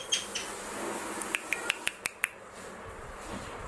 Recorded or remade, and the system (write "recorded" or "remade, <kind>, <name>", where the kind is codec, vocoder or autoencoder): recorded